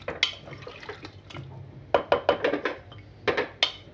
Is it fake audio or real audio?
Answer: real